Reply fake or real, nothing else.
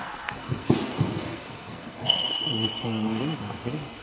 fake